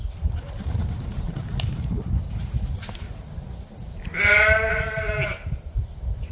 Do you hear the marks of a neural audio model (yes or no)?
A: no